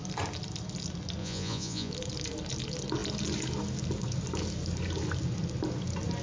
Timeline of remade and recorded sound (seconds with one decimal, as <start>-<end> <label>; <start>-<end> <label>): 0.0-1.2 recorded; 1.2-1.9 remade; 1.9-6.2 recorded